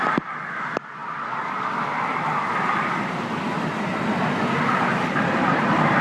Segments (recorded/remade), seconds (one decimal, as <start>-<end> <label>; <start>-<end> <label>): 0.0-6.0 recorded